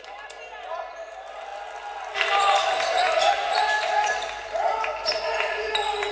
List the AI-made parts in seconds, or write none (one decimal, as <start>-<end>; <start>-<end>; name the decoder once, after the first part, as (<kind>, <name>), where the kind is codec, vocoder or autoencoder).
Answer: none